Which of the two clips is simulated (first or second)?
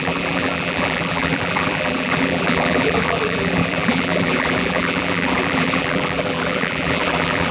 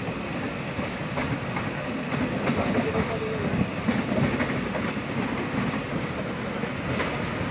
first